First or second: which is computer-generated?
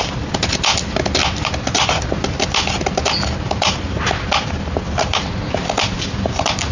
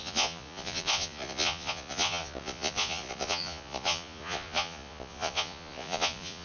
second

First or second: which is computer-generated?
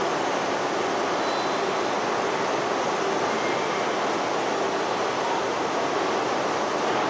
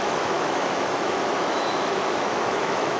second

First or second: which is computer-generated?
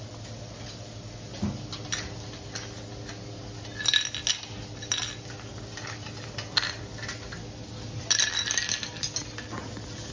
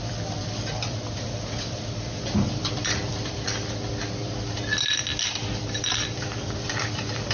second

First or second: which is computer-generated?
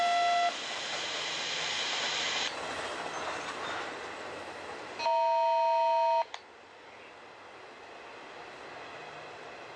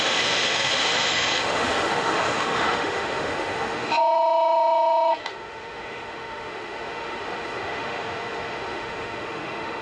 second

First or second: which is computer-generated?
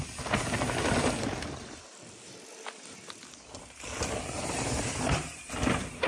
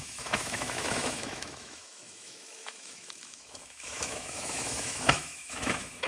second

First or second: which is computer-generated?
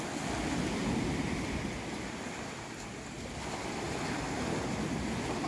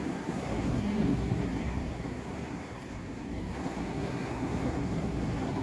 second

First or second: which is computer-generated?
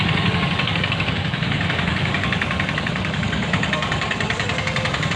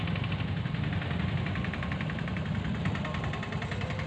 first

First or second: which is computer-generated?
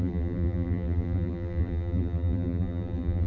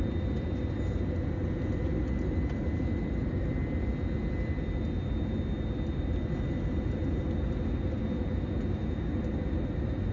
first